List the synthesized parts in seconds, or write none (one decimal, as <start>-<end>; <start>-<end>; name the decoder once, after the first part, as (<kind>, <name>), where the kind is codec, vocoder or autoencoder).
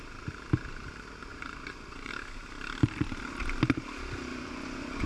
1.3-2.1 (vocoder, Vocos); 4.3-5.1